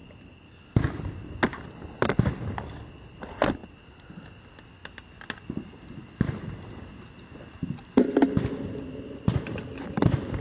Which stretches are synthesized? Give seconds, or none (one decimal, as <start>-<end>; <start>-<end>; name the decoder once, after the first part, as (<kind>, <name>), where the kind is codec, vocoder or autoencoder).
none